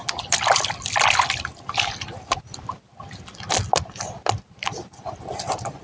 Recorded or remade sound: recorded